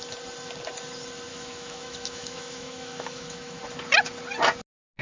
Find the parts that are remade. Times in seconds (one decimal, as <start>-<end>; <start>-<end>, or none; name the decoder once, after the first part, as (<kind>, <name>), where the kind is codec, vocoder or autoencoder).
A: 1.3-3.6 (autoencoder, DAC-VAE)